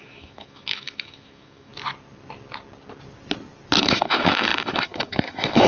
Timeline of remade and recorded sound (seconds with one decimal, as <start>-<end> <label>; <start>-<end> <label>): 0.0-1.7 remade; 1.7-3.8 recorded; 3.8-5.7 remade